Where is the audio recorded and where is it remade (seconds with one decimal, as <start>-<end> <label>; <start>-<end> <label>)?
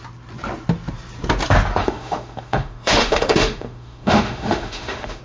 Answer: 0.0-1.8 recorded; 1.8-5.2 remade